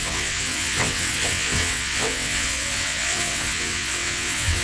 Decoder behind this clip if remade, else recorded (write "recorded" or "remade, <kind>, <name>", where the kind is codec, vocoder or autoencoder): remade, vocoder, WaveNeXt